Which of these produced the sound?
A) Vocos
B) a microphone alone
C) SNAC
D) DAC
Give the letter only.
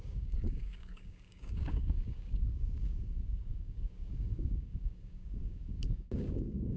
D